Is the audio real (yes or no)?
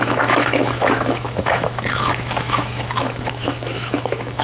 no